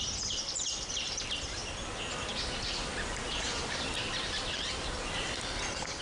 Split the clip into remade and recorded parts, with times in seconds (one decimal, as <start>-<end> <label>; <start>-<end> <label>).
0.0-6.0 remade